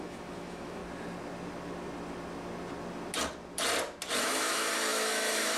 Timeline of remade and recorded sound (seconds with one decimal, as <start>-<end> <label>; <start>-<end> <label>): 0.0-0.8 remade; 0.8-4.2 recorded; 4.2-5.6 remade